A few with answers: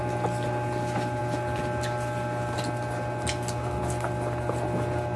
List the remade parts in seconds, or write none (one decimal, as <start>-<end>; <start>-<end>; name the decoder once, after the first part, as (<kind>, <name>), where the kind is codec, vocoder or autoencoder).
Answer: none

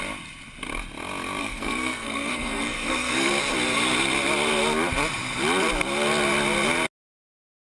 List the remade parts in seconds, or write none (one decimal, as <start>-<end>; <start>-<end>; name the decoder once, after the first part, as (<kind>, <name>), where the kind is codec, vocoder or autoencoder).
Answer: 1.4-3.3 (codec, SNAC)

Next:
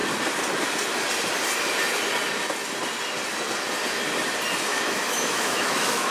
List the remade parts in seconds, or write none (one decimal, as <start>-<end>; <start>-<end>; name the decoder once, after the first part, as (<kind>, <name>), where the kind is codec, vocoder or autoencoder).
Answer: 4.7-6.1 (autoencoder, DAC-VAE)

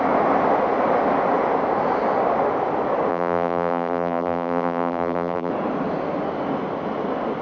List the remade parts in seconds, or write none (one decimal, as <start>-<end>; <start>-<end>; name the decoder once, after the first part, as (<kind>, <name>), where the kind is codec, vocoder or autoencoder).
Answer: 3.1-5.5 (vocoder, BigVGAN v2)

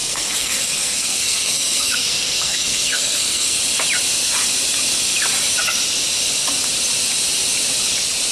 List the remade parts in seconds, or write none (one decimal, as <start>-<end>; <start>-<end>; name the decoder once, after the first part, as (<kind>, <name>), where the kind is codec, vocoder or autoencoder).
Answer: 0.0-3.6 (codec, SNAC)

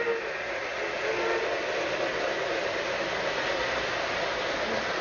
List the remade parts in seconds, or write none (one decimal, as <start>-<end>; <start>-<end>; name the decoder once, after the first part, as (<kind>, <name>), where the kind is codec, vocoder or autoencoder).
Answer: none

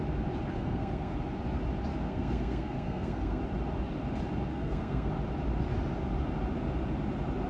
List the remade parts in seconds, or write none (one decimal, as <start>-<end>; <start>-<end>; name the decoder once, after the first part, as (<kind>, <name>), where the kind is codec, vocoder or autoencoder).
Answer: 0.5-1.2 (codec, SNAC); 1.9-3.4; 4.5-5.1